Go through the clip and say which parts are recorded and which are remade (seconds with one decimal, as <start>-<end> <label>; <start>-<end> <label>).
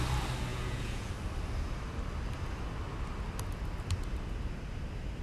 0.0-0.5 recorded; 0.5-1.1 remade; 1.1-5.2 recorded